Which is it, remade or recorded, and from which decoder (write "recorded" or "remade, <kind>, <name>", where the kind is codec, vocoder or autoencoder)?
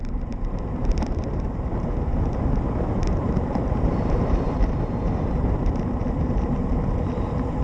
remade, vocoder, BigVGAN v2